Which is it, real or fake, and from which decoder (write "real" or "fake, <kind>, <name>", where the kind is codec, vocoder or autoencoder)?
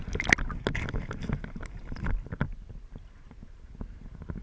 real